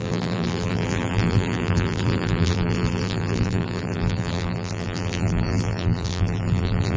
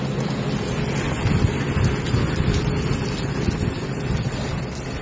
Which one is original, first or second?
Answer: second